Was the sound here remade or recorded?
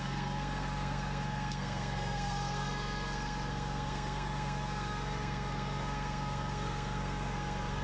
remade